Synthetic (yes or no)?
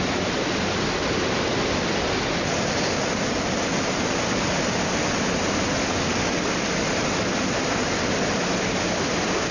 no